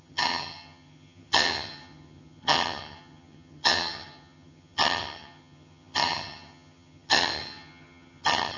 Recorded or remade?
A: remade